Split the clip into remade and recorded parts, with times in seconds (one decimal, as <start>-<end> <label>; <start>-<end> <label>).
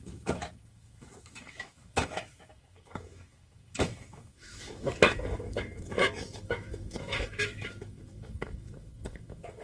0.0-9.6 remade